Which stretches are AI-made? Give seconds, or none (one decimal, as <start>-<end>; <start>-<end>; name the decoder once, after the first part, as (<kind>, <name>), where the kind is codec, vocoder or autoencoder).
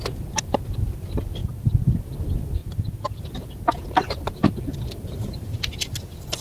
1.4-2.0 (vocoder, BigVGAN v2); 2.6-3.2; 4.4-5.6